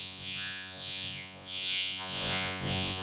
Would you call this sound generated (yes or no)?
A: yes